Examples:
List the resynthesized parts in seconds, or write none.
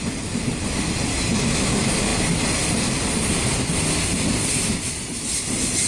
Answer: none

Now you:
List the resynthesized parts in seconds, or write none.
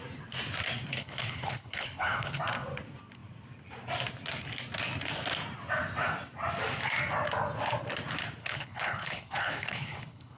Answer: 0.9-2.4 (codec, HILCodec); 8.4-10.4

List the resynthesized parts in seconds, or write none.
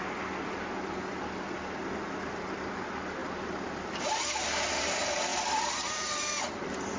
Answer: 5.3-6.3 (vocoder, BigVGAN v2)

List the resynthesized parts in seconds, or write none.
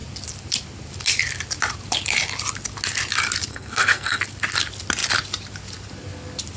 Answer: 3.5-4.2 (codec, SNAC)